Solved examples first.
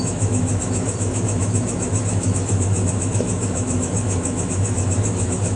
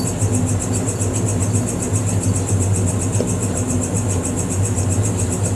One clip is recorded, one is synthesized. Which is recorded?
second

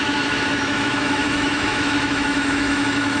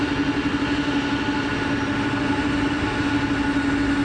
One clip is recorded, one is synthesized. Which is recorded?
second